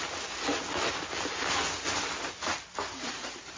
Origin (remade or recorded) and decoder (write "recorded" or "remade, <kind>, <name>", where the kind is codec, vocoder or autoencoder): recorded